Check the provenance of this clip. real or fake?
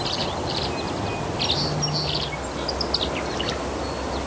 real